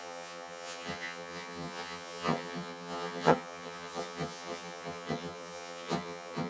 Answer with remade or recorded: remade